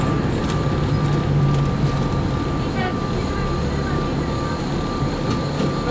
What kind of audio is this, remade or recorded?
recorded